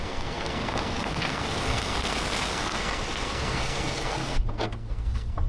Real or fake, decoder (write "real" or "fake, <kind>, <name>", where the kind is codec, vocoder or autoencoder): fake, codec, SNAC